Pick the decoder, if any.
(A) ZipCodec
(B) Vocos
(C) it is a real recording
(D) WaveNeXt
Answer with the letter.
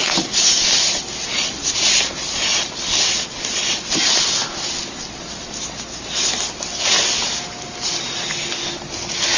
C